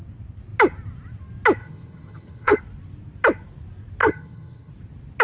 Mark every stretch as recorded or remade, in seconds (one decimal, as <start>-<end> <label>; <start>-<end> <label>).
0.0-1.6 recorded; 1.6-2.6 remade; 2.6-4.0 recorded; 4.0-4.7 remade; 4.7-5.2 recorded